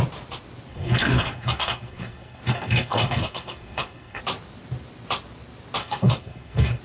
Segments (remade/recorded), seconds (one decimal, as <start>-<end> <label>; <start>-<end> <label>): 0.0-0.7 recorded; 0.7-4.2 remade; 4.2-5.8 recorded; 5.8-6.8 remade